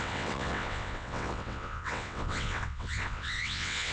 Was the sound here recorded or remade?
remade